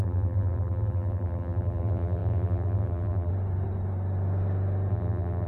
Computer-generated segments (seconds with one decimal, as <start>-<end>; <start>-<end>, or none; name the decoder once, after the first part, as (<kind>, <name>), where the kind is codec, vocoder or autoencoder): 0.0-3.3 (vocoder, BigVGAN v2); 4.9-5.5